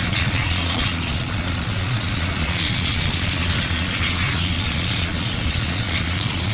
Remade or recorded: remade